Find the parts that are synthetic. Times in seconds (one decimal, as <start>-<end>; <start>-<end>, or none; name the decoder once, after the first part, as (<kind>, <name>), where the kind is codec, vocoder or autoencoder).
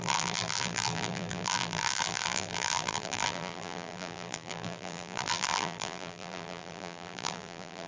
0.0-7.9 (vocoder, BigVGAN v2)